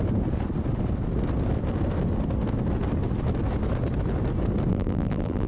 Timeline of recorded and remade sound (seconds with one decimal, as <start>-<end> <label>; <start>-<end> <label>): 0.0-4.7 recorded; 4.7-5.5 remade